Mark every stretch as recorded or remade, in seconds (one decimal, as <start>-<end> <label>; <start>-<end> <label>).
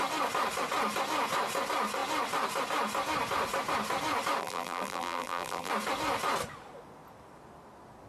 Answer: 0.0-4.4 recorded; 4.4-5.7 remade; 5.7-8.1 recorded